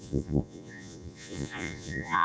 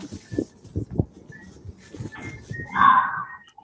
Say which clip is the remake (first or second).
first